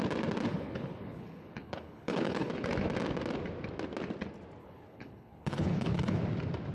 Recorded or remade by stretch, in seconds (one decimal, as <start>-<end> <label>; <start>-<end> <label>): 0.0-0.5 recorded; 0.5-2.5 remade; 2.5-4.6 recorded; 4.6-6.2 remade; 6.2-6.7 recorded